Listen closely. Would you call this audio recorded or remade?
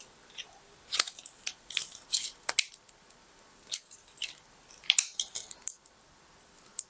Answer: recorded